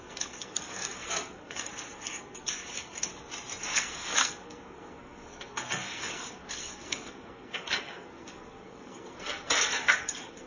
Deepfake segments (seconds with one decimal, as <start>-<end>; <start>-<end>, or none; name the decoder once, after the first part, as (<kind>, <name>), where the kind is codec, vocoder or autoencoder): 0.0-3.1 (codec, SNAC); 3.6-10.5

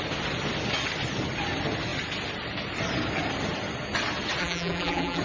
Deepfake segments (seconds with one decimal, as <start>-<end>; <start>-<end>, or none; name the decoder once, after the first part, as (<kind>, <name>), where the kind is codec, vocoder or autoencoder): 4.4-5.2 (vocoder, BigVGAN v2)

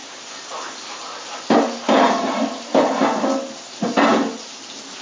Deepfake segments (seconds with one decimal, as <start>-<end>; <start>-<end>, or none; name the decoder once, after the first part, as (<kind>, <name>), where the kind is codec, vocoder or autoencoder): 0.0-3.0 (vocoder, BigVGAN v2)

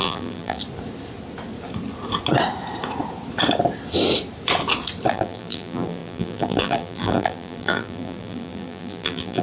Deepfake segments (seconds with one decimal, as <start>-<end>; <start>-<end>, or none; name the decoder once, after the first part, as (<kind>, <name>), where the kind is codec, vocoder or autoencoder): 0.0-0.6 (vocoder, BigVGAN v2); 5.1-9.4

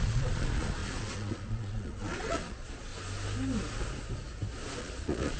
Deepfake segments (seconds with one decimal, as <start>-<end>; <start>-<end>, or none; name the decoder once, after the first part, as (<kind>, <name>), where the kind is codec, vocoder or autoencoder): 0.0-2.9 (vocoder, Vocos); 4.8-5.4

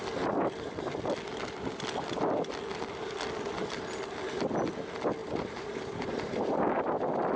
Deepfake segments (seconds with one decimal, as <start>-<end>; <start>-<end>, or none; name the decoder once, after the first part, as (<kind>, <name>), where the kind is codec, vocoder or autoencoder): 5.2-6.8 (vocoder, BigVGAN v2)

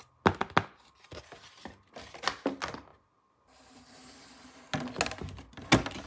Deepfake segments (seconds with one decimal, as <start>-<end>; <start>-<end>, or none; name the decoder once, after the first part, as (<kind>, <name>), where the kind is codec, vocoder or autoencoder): none